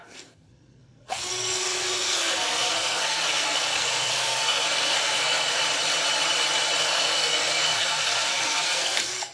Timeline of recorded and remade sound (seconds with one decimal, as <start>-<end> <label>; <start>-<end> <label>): 0.0-5.6 remade; 5.6-6.8 recorded; 6.8-9.3 remade